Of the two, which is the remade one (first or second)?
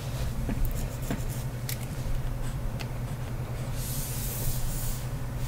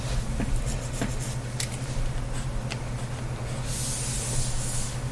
first